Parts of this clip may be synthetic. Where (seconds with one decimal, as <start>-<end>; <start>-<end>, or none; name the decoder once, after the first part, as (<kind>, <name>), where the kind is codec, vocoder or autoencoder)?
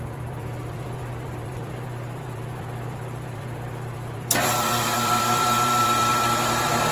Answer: 0.0-6.9 (vocoder, BigVGAN v2)